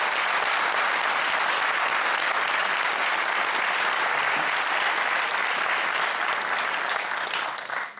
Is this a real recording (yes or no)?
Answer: yes